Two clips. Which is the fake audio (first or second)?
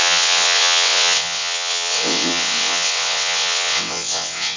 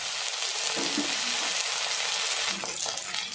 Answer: first